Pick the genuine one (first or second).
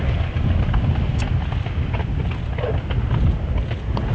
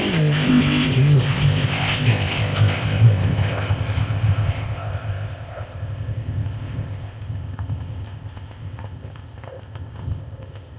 first